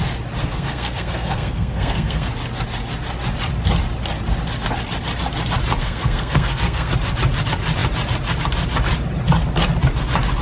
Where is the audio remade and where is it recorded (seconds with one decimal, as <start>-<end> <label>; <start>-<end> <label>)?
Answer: 0.0-0.4 recorded; 0.4-2.3 remade; 2.3-5.8 recorded; 5.8-6.9 remade; 6.9-10.4 recorded